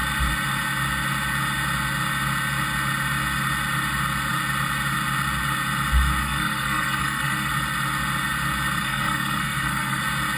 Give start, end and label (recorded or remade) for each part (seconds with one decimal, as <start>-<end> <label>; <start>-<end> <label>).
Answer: 0.0-6.2 recorded; 6.2-7.5 remade; 7.5-8.8 recorded; 8.8-10.0 remade; 10.0-10.4 recorded